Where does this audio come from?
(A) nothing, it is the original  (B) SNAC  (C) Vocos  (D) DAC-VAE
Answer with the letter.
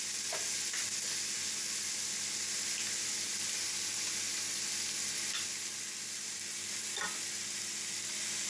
A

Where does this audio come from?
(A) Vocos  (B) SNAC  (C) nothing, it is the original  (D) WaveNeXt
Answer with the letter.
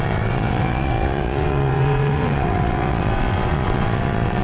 D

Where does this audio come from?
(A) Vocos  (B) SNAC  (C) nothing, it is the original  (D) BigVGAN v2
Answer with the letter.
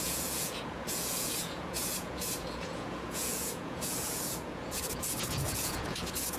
A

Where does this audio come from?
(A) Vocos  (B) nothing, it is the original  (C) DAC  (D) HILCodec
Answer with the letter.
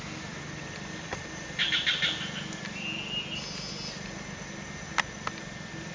B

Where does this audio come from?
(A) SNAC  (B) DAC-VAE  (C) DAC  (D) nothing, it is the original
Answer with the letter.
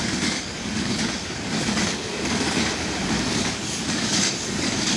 C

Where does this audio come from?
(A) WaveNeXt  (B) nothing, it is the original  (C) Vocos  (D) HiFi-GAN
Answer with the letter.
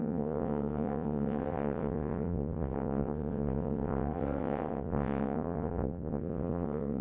A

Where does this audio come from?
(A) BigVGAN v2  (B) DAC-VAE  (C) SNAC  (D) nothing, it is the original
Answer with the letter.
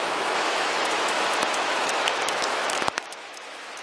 B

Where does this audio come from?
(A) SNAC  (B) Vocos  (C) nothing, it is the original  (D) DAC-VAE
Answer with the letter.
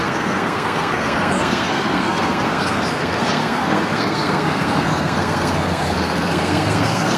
A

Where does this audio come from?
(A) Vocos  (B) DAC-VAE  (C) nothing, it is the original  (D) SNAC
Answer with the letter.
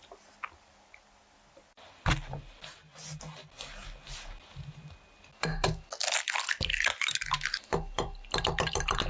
C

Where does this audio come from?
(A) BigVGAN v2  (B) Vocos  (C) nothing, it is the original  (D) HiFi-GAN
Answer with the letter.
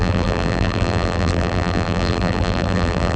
A